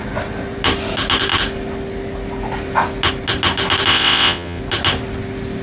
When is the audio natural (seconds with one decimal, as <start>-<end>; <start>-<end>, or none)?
0.0-3.9; 4.6-5.6